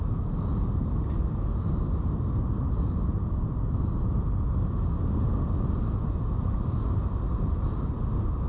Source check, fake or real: real